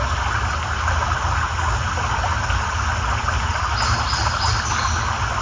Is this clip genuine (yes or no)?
yes